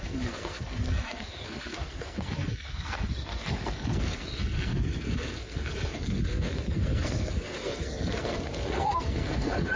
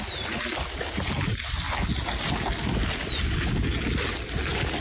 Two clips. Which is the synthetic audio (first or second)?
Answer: first